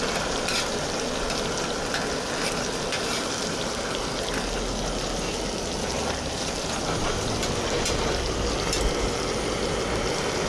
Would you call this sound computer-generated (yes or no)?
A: no